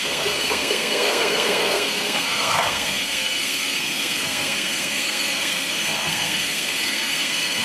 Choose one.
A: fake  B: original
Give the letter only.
A